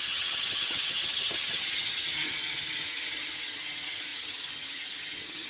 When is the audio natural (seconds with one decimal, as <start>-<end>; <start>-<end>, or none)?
none